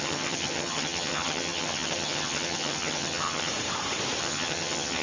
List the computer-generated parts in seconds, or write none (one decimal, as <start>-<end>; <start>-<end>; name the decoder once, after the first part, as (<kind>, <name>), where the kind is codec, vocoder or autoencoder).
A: 0.0-3.5 (vocoder, HiFi-GAN); 4.2-5.0